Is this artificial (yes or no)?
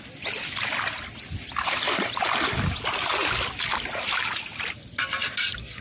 no